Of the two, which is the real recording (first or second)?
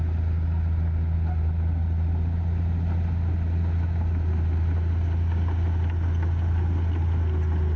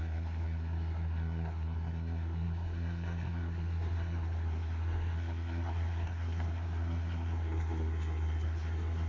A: first